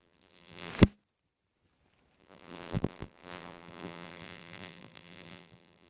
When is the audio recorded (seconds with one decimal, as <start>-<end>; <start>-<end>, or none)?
0.7-2.2